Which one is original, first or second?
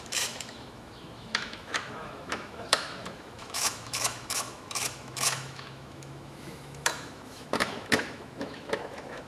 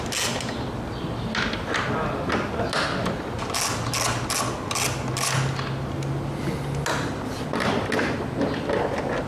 second